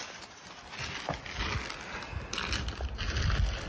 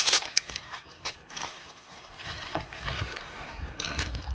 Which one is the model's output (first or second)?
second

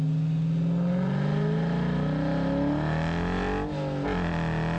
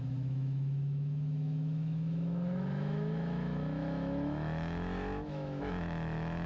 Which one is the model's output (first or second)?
second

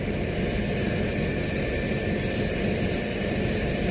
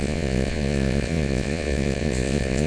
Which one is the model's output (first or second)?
second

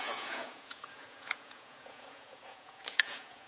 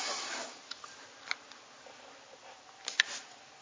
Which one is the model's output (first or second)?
first